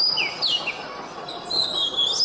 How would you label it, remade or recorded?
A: recorded